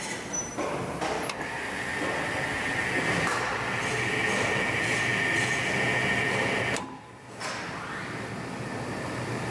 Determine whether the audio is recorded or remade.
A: recorded